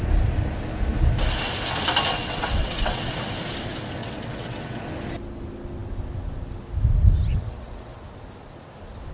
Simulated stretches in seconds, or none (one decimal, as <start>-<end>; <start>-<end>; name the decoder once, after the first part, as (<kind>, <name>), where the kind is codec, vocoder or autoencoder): 2.1-3.1 (vocoder, WaveNeXt); 4.0-4.8; 7.3-8.0